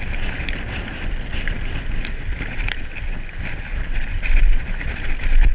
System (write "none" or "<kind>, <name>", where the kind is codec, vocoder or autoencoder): none